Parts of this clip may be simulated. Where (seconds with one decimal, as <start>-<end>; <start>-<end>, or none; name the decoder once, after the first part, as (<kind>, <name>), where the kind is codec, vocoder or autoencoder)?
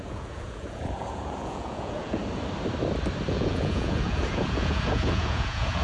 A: 0.0-2.2 (vocoder, Vocos); 3.3-5.8